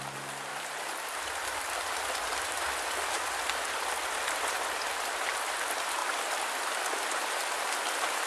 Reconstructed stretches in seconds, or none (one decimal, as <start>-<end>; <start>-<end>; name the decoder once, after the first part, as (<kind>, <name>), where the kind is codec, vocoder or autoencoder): 0.5-5.5 (vocoder, BigVGAN v2)